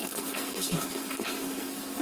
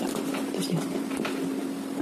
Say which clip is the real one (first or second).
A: second